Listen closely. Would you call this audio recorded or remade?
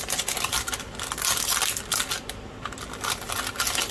recorded